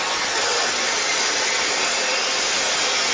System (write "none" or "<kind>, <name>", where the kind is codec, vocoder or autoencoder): none